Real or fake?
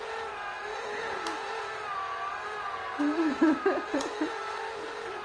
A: fake